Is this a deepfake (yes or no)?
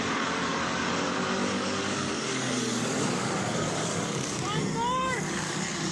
yes